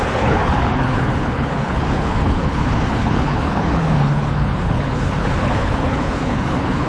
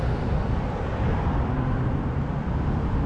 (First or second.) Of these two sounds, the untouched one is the second